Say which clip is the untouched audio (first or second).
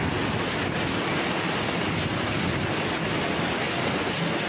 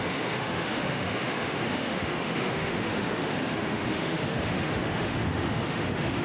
first